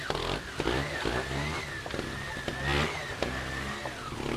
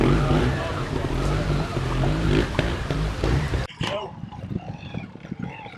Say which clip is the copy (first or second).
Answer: second